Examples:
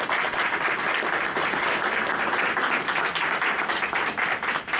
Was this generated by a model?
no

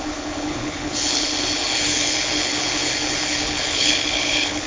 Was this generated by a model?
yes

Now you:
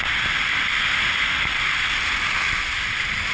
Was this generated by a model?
no